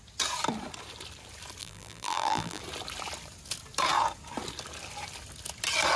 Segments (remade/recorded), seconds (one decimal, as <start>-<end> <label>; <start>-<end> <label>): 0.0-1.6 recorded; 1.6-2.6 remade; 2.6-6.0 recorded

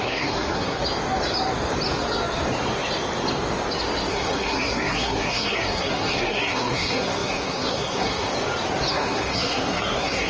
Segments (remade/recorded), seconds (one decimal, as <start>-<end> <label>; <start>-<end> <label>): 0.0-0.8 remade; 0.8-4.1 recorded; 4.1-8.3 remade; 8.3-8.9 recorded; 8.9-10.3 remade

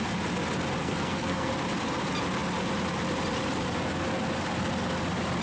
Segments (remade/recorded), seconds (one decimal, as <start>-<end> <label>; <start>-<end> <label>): 0.0-0.8 recorded; 0.8-1.5 remade; 1.5-5.4 recorded

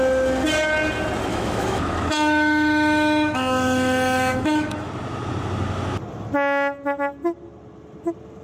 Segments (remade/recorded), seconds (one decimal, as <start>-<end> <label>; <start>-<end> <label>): 0.0-1.3 recorded; 1.3-4.9 remade; 4.9-8.4 recorded

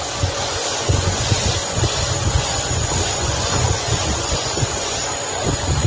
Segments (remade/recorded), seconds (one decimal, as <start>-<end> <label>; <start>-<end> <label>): 0.0-5.9 remade

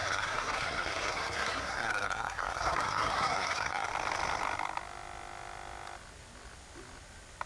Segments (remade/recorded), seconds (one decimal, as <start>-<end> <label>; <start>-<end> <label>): 0.0-3.9 remade; 3.9-7.5 recorded